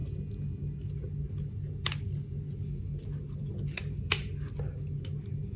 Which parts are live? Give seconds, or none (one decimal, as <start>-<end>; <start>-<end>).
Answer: 0.0-5.6